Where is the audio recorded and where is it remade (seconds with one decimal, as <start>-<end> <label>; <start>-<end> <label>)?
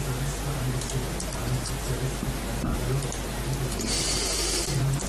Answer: 0.0-1.4 recorded; 1.4-2.0 remade; 2.0-5.1 recorded